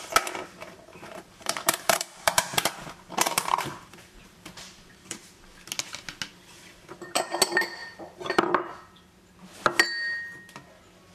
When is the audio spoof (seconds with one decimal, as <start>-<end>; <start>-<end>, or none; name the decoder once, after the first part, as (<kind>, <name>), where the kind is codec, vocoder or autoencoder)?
0.9-5.3 (vocoder, BigVGAN v2); 7.8-8.7

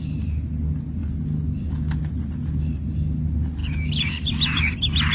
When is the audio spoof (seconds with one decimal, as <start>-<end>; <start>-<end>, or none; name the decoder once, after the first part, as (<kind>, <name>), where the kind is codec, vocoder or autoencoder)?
3.6-4.6 (vocoder, BigVGAN v2)

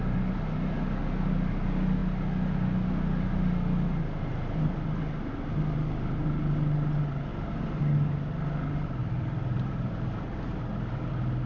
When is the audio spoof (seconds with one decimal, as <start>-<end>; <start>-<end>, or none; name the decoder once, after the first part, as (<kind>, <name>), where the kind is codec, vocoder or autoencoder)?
7.3-7.8 (vocoder, BigVGAN v2); 9.0-9.9